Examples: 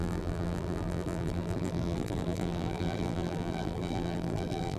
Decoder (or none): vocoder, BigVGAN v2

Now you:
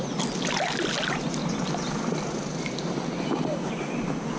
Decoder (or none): none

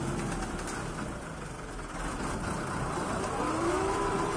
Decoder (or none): none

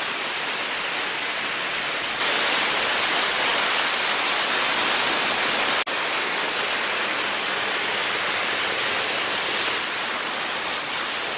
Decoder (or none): none